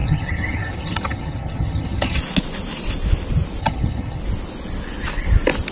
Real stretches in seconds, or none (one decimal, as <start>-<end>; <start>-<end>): 2.2-3.6; 4.2-5.7